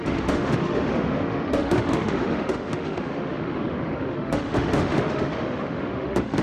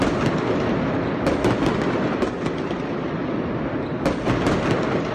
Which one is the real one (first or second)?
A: second